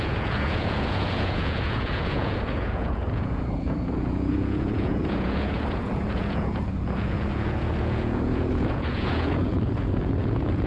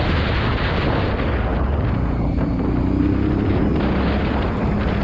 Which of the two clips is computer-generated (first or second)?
first